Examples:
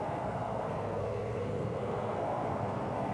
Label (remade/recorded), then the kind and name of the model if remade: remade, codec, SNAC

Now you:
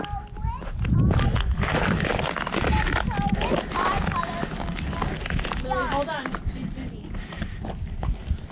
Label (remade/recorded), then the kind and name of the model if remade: recorded